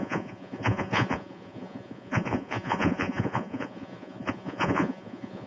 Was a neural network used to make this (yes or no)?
yes